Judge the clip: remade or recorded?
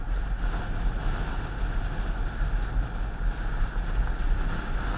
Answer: recorded